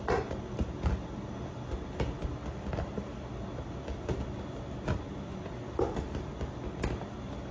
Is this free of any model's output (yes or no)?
yes